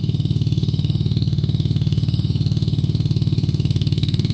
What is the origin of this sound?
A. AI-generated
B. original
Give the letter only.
A